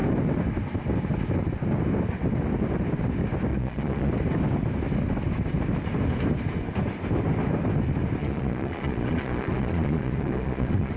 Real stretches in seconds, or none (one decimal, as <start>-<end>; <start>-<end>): 0.0-3.5; 4.1-8.2